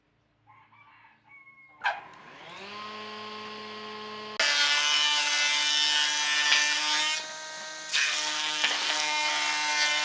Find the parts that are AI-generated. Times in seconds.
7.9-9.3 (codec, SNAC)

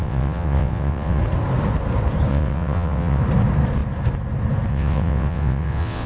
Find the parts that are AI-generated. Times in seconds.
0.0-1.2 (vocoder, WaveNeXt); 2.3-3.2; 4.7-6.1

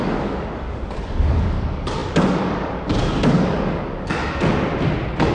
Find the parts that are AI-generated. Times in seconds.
0.0-4.2 (codec, DAC)

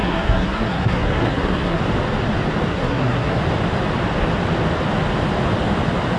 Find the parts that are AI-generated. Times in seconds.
0.0-1.8 (codec, SNAC); 2.7-3.4

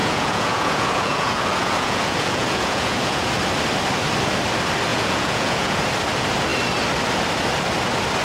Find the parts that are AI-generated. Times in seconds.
0.0-3.3 (vocoder, Vocos); 4.9-5.8